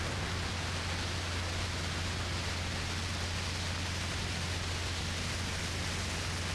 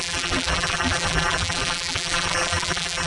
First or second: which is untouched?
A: first